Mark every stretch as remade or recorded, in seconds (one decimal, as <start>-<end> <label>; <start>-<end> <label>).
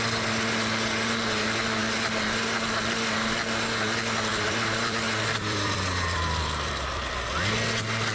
0.0-4.3 recorded; 4.3-7.1 remade; 7.1-8.1 recorded